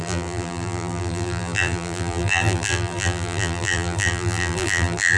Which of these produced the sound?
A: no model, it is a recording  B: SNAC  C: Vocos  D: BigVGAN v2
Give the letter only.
D